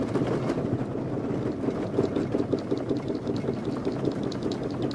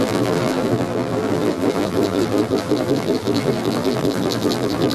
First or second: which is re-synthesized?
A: second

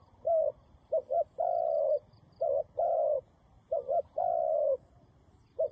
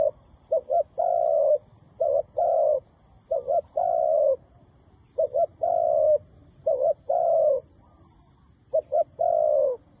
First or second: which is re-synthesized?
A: first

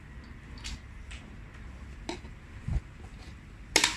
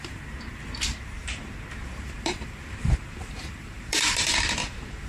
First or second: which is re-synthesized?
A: second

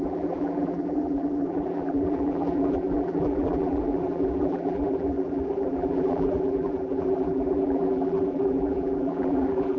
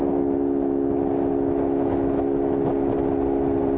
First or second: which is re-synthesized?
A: first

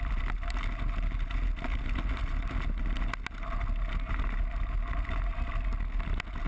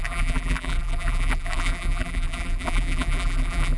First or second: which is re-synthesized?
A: second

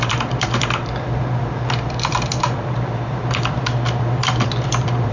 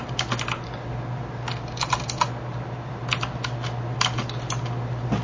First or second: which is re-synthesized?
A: first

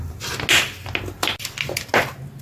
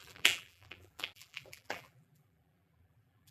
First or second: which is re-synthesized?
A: second